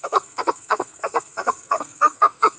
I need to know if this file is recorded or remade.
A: remade